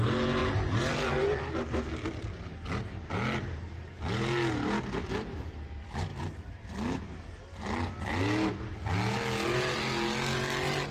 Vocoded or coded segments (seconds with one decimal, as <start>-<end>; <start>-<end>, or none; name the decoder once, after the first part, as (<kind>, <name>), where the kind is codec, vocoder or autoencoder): none